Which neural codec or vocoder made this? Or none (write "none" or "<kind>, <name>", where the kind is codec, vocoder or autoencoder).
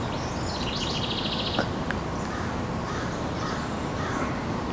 none